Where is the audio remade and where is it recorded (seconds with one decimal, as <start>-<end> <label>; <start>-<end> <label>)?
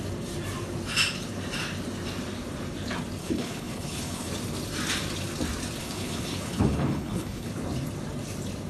0.0-3.2 recorded; 3.2-4.3 remade; 4.3-5.8 recorded; 5.8-7.5 remade; 7.5-8.7 recorded